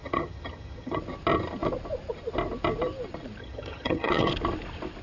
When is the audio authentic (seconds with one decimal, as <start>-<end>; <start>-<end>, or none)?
1.0-3.4; 4.3-5.0